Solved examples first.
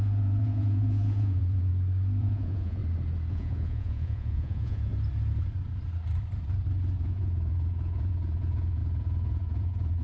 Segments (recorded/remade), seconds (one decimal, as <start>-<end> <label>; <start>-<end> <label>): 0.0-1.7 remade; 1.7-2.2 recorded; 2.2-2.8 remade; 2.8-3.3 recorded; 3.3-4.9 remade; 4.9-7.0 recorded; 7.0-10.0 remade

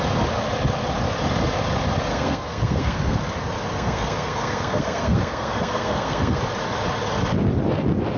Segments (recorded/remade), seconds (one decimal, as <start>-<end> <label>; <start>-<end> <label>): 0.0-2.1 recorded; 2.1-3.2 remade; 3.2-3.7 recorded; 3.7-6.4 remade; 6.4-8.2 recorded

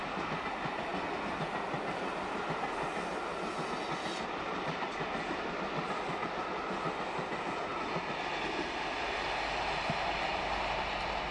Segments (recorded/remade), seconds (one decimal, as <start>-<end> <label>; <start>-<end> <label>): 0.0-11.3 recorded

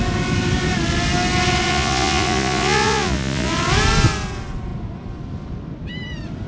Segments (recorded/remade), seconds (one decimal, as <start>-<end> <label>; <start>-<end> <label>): 0.0-1.7 recorded; 1.7-3.5 remade; 3.5-6.5 recorded

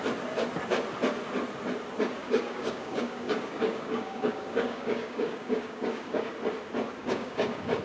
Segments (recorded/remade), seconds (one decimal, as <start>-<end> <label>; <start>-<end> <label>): 0.0-2.2 recorded; 2.2-6.3 remade; 6.3-7.0 recorded; 7.0-7.8 remade